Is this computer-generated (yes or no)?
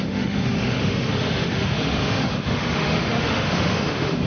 yes